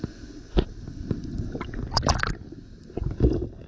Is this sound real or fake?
real